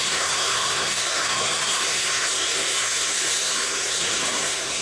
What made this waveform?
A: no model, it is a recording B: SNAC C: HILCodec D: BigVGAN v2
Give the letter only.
B